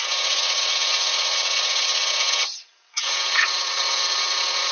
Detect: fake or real fake